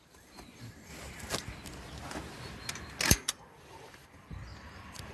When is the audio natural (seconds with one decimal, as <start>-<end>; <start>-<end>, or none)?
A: 0.9-3.1